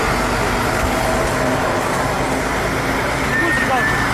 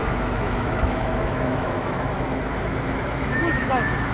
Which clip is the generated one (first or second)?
second